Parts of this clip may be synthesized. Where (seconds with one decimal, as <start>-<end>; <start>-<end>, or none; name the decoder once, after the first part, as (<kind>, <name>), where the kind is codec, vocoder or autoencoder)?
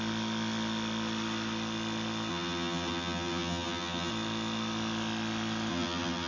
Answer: 2.3-4.1 (vocoder, BigVGAN v2); 5.7-6.3